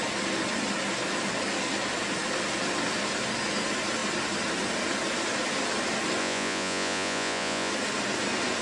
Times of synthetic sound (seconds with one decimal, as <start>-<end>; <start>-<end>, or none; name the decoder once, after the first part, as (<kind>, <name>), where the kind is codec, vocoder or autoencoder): 6.2-7.7 (vocoder, Vocos)